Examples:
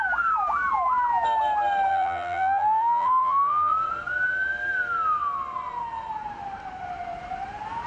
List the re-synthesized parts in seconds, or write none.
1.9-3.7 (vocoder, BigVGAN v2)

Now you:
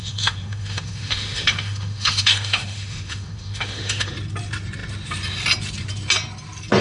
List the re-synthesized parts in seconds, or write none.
0.0-4.1 (autoencoder, DAC-VAE)

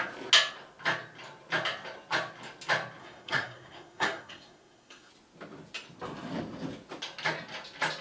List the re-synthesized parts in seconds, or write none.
3.0-5.1 (codec, SNAC)

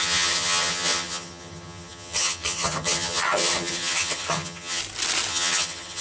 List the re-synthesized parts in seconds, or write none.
0.0-4.8 (vocoder, HiFi-GAN); 5.3-6.0